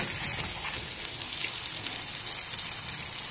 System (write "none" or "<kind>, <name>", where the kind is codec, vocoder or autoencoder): none